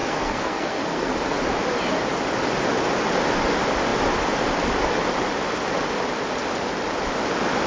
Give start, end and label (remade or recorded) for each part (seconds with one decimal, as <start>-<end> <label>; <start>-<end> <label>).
0.0-1.1 remade; 1.1-7.7 recorded